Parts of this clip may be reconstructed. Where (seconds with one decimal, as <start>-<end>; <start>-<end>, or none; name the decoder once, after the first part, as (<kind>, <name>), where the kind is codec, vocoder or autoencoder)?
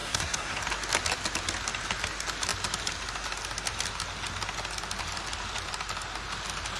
0.0-0.6 (codec, SNAC)